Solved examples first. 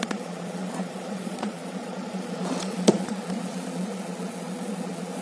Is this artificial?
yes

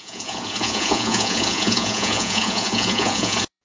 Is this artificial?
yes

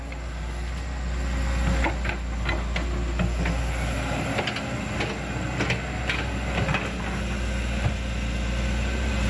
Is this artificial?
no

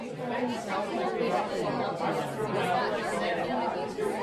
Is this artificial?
no